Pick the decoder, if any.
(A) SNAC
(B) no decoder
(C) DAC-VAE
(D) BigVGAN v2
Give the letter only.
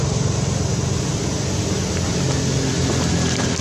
B